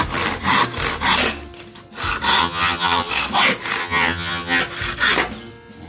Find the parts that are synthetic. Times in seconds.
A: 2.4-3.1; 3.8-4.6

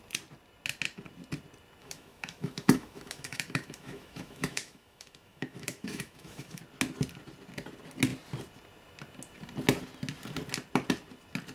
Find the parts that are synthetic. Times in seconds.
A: 1.8-6.6

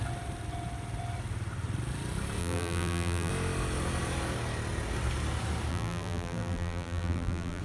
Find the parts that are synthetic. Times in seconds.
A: 2.4-3.3; 5.7-7.6

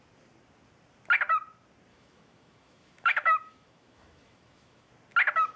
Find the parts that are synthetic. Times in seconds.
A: 1.9-4.9

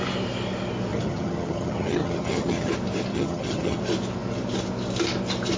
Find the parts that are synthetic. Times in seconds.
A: 0.9-2.7; 3.1-3.8